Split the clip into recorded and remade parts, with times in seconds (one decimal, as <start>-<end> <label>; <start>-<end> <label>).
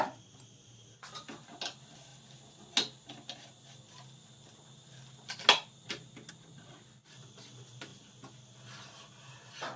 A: 0.0-9.8 recorded